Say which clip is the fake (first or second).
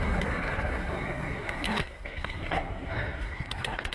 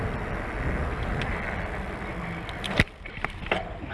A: first